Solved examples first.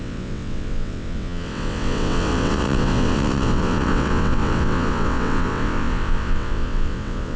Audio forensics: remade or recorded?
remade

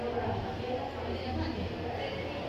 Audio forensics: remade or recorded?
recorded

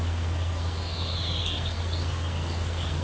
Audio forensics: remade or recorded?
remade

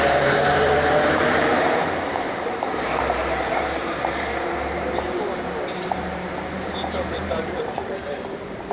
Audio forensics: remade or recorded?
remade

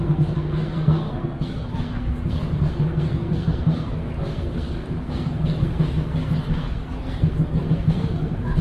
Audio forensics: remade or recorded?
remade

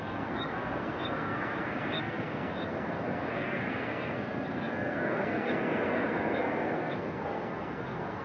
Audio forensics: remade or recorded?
remade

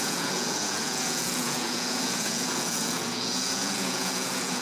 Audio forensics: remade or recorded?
remade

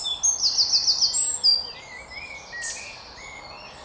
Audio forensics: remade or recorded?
recorded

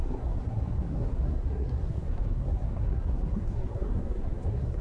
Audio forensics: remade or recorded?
remade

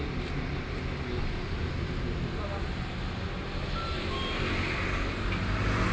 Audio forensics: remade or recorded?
recorded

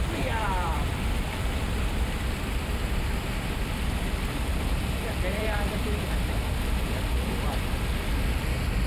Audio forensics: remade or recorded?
remade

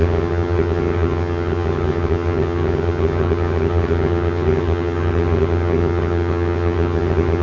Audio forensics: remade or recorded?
remade